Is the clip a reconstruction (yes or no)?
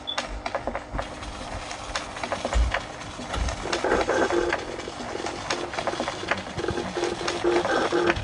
no